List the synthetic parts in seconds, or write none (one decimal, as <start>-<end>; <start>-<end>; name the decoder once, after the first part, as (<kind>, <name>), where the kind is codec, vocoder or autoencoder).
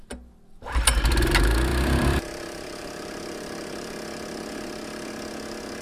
1.7-5.1 (vocoder, BigVGAN v2)